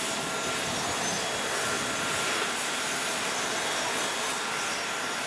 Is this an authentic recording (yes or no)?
yes